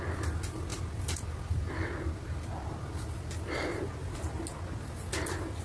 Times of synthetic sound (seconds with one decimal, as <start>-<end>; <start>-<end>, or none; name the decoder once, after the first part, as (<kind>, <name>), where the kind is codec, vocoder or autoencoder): none

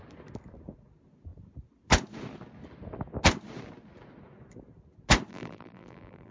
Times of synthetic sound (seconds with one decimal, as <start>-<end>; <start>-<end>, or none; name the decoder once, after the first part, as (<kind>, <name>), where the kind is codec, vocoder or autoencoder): 5.3-6.3 (vocoder, BigVGAN v2)